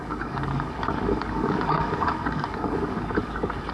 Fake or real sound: fake